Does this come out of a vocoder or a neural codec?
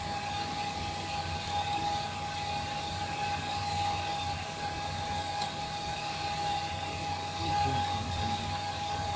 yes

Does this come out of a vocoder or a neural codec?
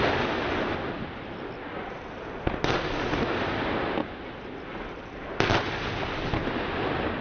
no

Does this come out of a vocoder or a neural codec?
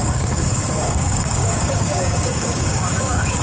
yes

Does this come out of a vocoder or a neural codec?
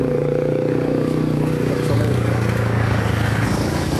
yes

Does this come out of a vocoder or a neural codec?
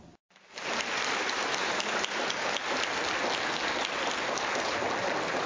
no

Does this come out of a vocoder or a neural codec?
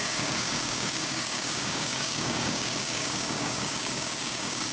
yes